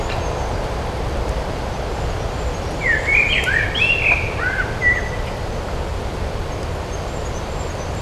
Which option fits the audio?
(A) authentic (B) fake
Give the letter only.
B